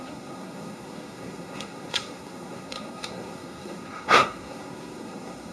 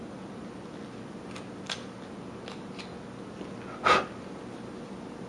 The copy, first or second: first